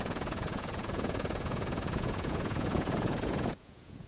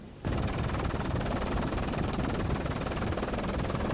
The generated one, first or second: first